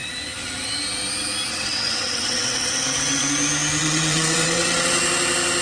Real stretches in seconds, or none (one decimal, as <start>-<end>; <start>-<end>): 0.0-1.5; 3.3-3.8; 5.0-5.6